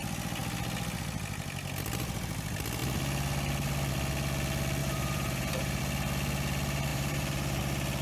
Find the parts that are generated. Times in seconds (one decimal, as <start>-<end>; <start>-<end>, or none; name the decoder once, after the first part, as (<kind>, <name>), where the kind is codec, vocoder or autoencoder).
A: 4.8-5.8 (vocoder, BigVGAN v2); 6.9-7.6